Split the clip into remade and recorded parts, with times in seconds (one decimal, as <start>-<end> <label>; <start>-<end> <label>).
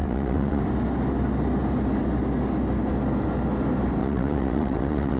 0.0-0.6 remade; 0.6-4.0 recorded; 4.0-5.2 remade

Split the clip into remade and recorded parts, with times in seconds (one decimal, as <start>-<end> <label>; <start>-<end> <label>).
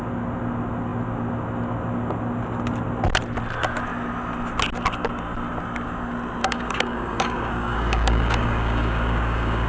0.0-6.4 recorded; 6.4-9.7 remade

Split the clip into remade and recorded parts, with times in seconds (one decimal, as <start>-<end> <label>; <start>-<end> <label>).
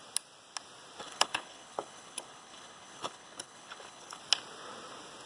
0.0-1.0 recorded; 1.0-4.2 remade; 4.2-5.3 recorded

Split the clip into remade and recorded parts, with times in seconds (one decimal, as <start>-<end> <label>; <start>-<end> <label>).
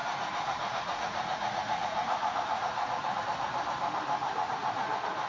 0.0-3.2 remade; 3.2-4.2 recorded; 4.2-5.3 remade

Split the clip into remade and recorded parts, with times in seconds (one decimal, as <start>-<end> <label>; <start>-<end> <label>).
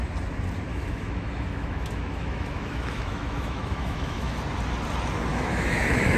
0.0-0.7 recorded; 0.7-4.4 remade; 4.4-5.3 recorded; 5.3-6.2 remade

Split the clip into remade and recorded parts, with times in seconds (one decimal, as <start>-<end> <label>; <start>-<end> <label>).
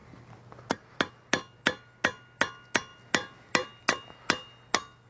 0.0-5.1 recorded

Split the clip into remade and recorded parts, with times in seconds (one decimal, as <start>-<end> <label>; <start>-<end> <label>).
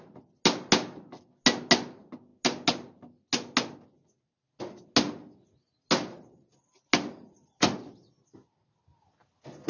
0.0-9.7 recorded